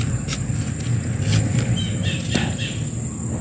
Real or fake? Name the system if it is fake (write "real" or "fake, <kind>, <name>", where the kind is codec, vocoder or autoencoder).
real